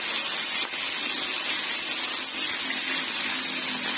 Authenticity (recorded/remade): recorded